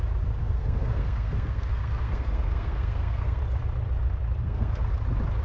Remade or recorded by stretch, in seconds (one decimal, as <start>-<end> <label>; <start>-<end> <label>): 0.0-0.4 recorded; 0.4-3.4 remade; 3.4-4.4 recorded; 4.4-4.9 remade; 4.9-5.4 recorded